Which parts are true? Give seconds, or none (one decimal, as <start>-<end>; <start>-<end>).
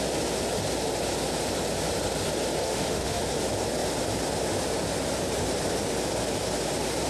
0.0-2.6; 3.2-7.1